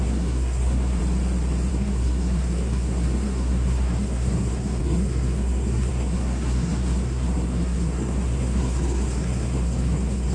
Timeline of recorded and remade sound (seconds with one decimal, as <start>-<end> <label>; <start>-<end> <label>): 0.0-1.0 remade; 1.0-1.7 recorded; 1.7-10.3 remade